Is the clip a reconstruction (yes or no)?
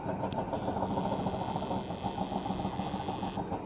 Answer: no